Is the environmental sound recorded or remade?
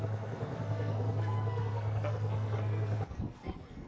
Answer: remade